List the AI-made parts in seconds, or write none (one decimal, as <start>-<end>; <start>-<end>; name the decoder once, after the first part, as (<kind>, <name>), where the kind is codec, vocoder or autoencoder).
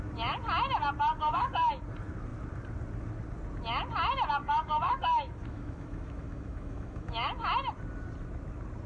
1.1-1.7 (autoencoder, DAC-VAE); 4.4-7.5